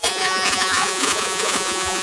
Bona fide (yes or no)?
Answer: no